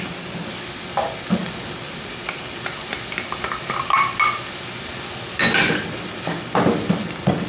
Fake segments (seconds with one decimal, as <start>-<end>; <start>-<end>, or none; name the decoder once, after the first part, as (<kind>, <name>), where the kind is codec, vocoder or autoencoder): none